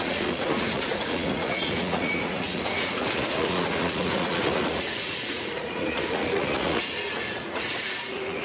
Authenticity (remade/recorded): remade